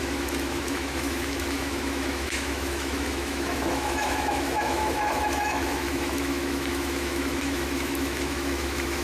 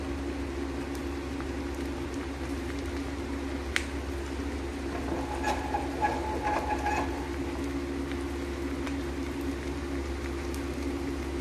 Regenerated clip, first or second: first